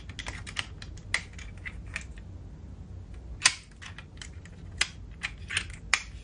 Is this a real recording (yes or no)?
yes